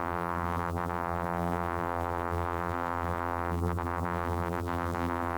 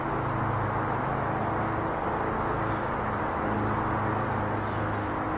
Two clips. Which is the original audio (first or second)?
second